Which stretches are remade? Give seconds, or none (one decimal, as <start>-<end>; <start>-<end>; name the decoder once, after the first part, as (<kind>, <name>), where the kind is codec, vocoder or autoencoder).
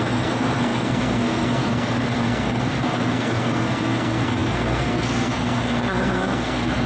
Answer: 0.0-6.9 (codec, SNAC)